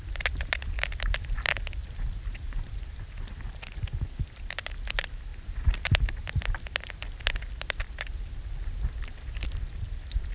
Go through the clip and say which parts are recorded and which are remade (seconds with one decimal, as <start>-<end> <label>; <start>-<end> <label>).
0.0-1.8 recorded; 1.8-3.4 remade; 3.4-10.3 recorded